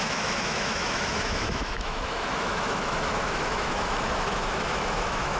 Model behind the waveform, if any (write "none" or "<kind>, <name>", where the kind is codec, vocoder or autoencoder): autoencoder, DAC-VAE